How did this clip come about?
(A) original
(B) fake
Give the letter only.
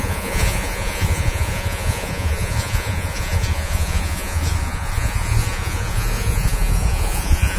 B